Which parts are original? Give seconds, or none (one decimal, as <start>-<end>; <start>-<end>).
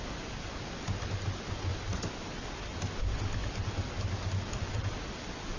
0.0-5.6